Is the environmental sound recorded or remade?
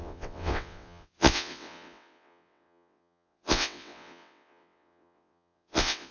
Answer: remade